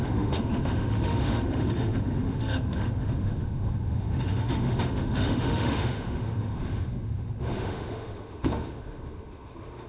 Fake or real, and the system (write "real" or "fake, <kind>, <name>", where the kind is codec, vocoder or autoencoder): fake, autoencoder, DAC-VAE